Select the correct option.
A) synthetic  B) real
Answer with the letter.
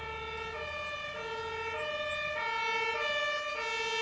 B